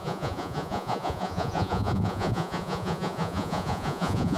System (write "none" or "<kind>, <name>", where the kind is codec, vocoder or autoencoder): vocoder, Vocos